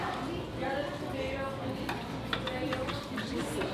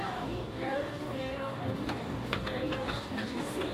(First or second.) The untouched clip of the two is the first